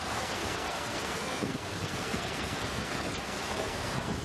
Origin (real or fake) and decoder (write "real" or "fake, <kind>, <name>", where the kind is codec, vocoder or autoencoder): fake, codec, SNAC